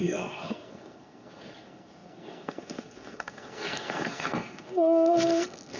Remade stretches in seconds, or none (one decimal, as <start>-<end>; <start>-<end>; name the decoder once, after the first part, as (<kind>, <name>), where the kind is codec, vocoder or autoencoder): 0.0-5.8 (codec, SNAC)